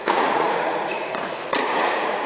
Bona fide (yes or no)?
no